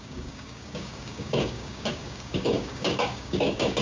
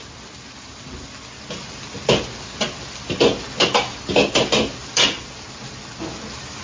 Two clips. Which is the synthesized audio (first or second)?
first